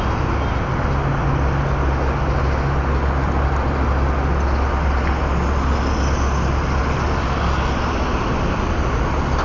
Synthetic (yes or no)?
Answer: no